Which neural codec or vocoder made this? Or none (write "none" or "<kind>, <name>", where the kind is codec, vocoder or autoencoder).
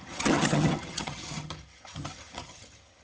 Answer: vocoder, HiFi-GAN